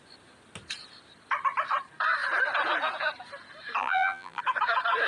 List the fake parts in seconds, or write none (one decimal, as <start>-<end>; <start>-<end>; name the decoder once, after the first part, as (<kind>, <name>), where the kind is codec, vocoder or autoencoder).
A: 3.8-4.4 (vocoder, BigVGAN v2)